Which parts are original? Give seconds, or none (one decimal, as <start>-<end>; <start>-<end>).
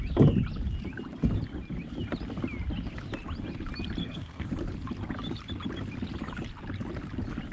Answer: 0.0-4.0; 4.5-7.5